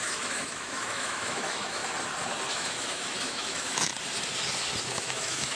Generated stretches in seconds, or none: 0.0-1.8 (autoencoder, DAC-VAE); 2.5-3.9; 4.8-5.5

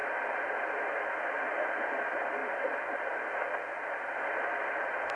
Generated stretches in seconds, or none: 0.0-0.5 (vocoder, BigVGAN v2); 2.4-3.1

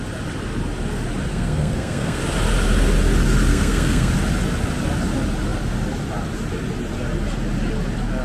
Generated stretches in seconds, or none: 1.3-2.2 (codec, SNAC); 3.5-4.1

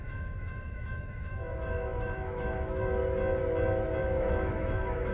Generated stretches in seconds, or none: 0.0-3.0 (autoencoder, DAC-VAE); 4.0-5.1

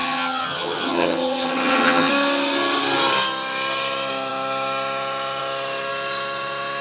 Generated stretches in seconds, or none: 0.0-2.1 (vocoder, HiFi-GAN)